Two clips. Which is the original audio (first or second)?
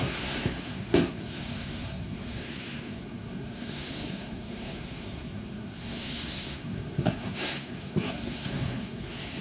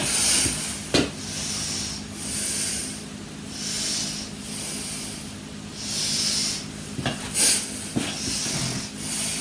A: second